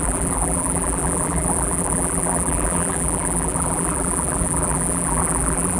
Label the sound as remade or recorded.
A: remade